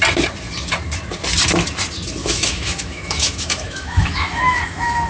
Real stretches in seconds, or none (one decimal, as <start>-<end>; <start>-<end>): 0.0-2.2